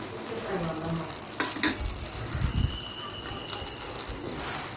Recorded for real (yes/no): yes